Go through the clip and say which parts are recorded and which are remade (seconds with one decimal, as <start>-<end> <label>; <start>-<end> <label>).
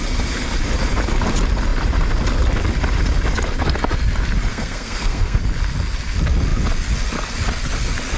0.0-4.5 recorded; 4.5-5.4 remade; 5.4-8.2 recorded